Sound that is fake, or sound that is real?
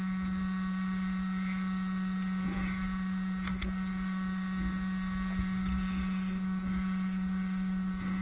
fake